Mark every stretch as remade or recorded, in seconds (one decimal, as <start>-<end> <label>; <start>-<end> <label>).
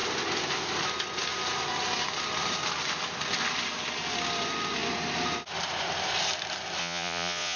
0.0-6.8 recorded; 6.8-7.6 remade